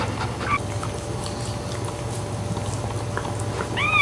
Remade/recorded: recorded